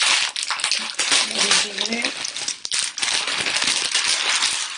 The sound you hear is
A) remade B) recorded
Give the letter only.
B